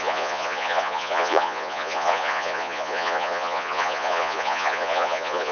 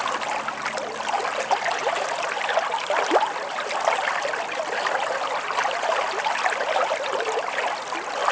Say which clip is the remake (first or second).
first